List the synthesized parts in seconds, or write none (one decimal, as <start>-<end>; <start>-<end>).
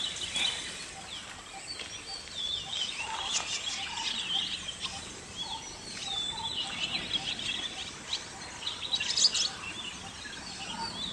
none